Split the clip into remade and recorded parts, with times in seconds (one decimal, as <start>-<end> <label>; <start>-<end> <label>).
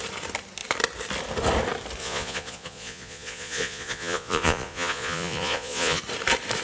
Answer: 0.0-2.0 recorded; 2.0-6.0 remade; 6.0-6.6 recorded